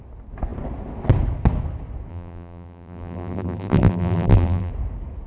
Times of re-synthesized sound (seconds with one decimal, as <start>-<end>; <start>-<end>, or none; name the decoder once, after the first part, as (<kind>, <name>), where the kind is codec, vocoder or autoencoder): 2.1-4.7 (vocoder, BigVGAN v2)